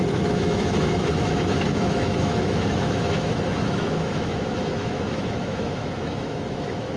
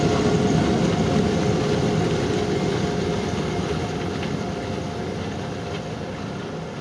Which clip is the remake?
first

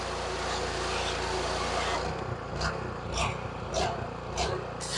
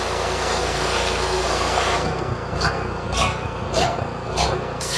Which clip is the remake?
second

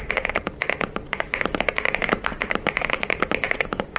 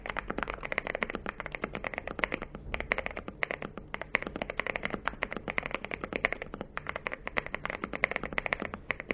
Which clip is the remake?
first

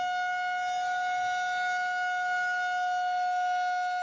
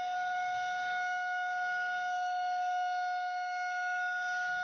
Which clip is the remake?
second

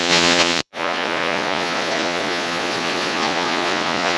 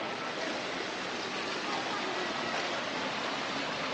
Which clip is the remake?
first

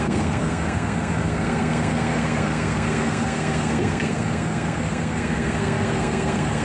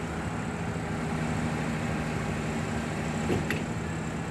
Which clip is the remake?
first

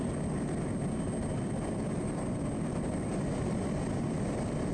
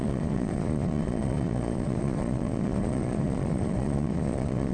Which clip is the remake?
second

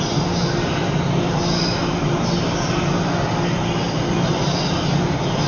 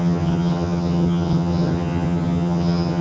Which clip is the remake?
second